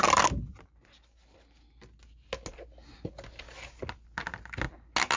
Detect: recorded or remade recorded